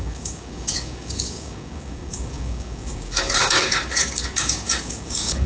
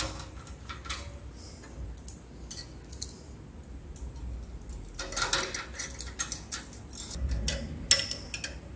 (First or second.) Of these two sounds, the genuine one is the second